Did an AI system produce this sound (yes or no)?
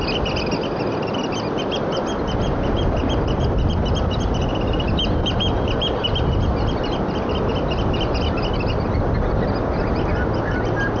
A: no